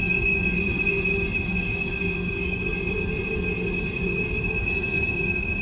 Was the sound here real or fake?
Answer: real